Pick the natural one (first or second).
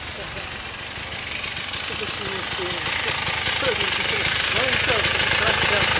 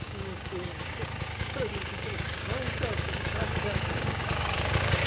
first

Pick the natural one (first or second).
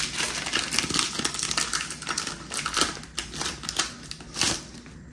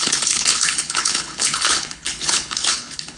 first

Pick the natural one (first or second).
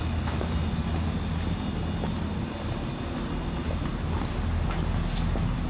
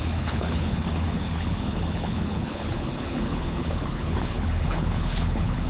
first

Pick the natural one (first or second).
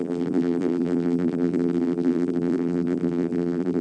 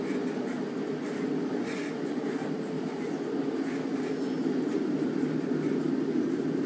second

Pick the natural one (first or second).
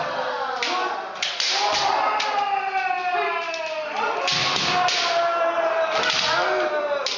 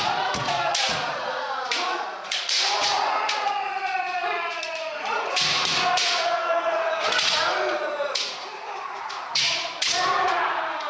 first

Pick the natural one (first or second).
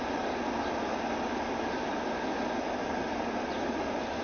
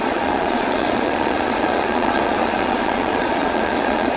first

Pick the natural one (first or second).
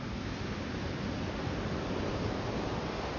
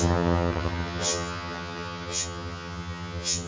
first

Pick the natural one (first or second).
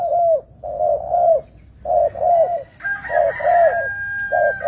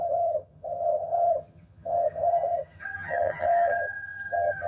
first